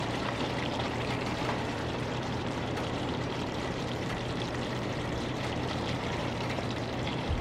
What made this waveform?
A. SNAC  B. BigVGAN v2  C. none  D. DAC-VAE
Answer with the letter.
B